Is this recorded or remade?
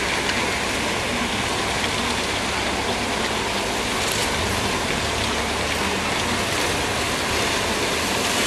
recorded